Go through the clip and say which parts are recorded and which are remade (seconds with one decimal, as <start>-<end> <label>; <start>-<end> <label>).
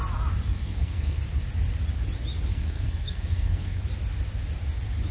0.0-0.5 recorded; 0.5-1.2 remade; 1.2-2.5 recorded; 2.5-3.8 remade; 3.8-5.1 recorded